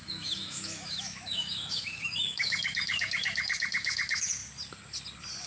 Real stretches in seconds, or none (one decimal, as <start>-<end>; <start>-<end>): 4.4-5.5